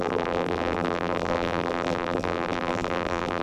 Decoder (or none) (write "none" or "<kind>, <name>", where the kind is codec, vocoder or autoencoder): vocoder, BigVGAN v2